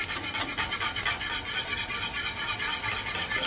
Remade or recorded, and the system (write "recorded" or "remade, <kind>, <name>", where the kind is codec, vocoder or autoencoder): recorded